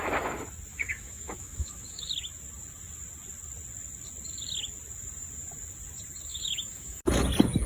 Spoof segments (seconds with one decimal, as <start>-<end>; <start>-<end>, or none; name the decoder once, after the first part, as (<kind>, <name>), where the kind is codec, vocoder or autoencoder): 0.7-2.1 (autoencoder, DAC-VAE); 6.3-7.1